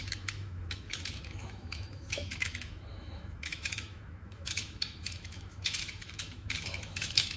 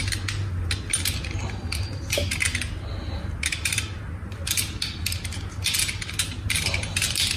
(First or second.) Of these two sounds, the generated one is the first